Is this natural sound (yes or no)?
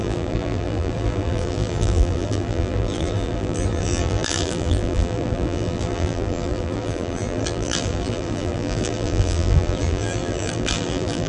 no